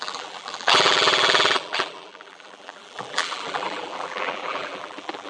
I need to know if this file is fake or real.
fake